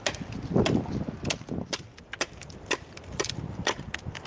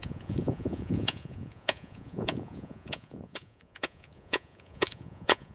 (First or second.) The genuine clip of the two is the first